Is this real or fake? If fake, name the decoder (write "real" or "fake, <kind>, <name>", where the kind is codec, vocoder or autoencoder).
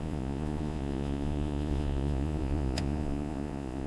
fake, vocoder, Vocos